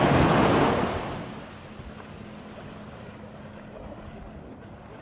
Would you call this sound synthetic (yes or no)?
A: no